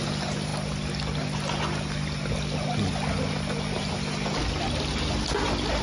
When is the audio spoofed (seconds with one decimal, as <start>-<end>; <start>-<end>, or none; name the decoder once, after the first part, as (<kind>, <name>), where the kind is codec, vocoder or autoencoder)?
none